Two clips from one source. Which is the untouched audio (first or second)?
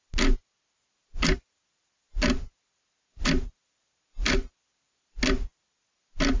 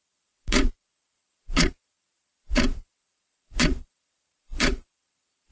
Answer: first